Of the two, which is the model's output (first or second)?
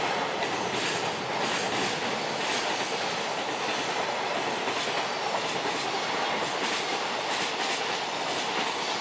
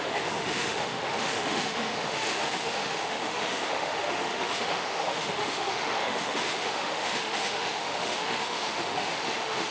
second